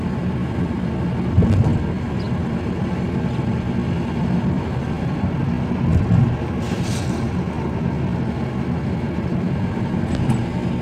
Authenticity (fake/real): real